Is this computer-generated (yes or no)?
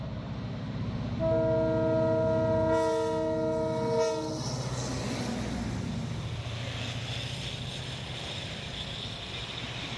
no